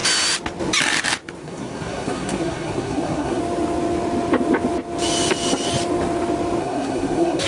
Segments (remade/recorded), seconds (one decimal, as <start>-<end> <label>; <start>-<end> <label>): 0.0-1.4 recorded; 1.4-3.4 remade; 3.4-6.6 recorded; 6.6-7.5 remade